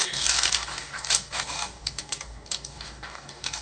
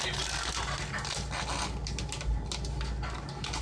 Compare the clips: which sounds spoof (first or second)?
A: first